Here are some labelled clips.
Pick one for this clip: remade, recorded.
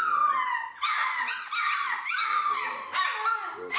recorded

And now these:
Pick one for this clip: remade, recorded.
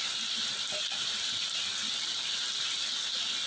recorded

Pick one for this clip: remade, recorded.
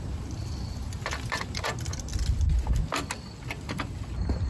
recorded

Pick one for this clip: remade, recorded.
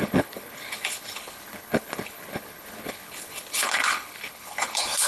remade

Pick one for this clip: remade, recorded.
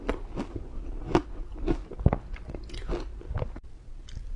recorded